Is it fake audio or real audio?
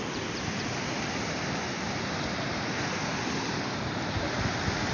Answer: real